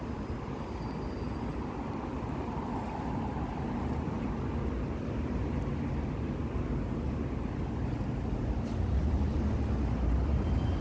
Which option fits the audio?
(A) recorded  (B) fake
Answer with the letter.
A